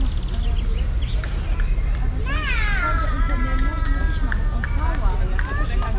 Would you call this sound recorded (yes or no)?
yes